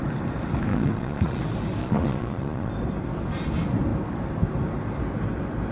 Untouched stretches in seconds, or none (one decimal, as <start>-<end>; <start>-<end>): 0.0-0.7; 1.4-1.8; 2.7-5.7